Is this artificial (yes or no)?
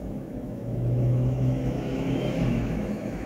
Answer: yes